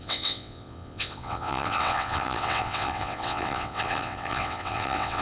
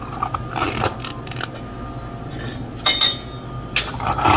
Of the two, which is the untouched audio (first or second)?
second